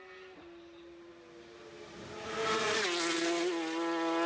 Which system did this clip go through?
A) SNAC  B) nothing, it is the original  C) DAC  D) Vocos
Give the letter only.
B